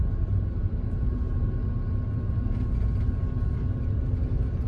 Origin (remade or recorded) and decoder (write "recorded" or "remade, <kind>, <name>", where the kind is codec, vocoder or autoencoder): recorded